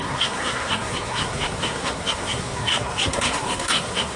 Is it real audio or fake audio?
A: fake